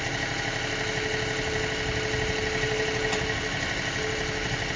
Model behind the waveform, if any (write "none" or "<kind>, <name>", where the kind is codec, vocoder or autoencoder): none